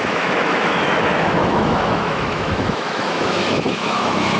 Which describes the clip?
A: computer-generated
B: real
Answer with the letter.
A